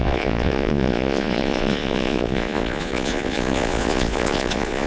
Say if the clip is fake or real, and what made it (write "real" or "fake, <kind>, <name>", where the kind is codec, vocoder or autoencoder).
fake, vocoder, Vocos